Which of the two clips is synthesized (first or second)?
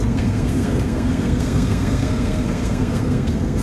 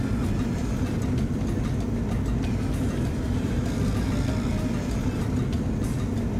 first